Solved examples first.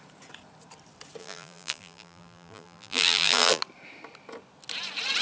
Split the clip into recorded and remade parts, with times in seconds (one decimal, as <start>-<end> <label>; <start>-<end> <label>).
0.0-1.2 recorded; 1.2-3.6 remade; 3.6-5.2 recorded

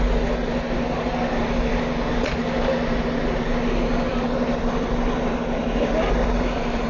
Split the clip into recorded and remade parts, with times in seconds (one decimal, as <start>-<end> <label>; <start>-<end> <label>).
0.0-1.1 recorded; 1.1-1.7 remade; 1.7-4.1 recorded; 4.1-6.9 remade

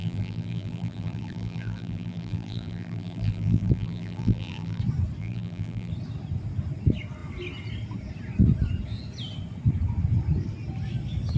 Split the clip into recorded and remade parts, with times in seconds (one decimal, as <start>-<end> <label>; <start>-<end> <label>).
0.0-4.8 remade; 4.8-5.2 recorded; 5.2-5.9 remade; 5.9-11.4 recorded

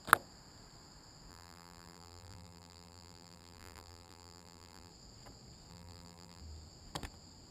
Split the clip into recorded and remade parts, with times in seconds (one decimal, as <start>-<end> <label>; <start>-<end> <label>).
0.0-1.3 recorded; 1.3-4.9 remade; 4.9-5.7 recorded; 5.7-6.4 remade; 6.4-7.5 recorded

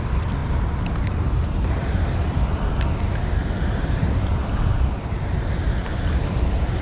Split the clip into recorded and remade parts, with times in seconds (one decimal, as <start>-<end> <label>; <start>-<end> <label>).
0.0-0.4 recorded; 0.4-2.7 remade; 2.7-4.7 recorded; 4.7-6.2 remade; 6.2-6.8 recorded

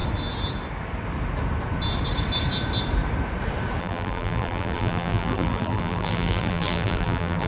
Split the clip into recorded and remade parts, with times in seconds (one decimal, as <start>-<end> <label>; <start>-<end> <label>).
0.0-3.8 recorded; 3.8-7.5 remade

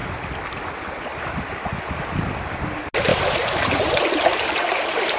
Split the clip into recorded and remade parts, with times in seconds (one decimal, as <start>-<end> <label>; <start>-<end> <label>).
0.0-3.1 recorded; 3.1-5.2 remade